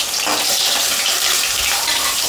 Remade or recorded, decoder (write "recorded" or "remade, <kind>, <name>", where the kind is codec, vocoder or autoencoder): remade, vocoder, BigVGAN v2